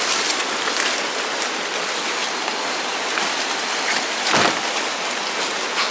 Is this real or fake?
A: real